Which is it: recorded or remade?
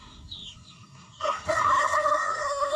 remade